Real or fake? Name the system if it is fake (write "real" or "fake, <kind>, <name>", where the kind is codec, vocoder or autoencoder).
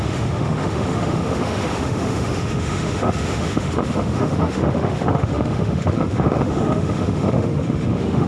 fake, autoencoder, DAC-VAE